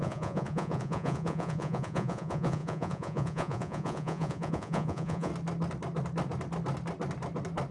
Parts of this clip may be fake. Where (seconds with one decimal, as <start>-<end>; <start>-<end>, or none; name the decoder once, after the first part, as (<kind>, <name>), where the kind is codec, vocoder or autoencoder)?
0.0-5.3 (vocoder, Vocos)